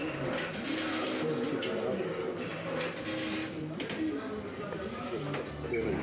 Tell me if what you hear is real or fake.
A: real